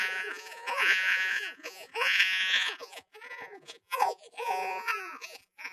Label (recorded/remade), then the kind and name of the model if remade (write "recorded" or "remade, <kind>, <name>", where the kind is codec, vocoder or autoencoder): remade, vocoder, Vocos